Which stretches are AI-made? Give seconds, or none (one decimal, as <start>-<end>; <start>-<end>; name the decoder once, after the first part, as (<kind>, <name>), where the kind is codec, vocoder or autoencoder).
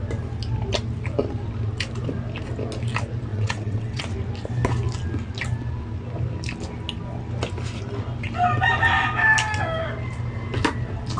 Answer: 3.3-4.0 (vocoder, WaveNeXt)